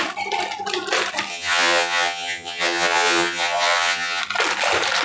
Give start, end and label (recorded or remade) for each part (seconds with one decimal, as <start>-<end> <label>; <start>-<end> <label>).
0.0-1.3 recorded; 1.3-4.2 remade; 4.2-5.0 recorded